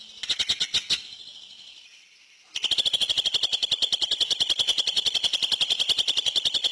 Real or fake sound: real